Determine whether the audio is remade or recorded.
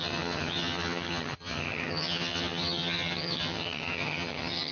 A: remade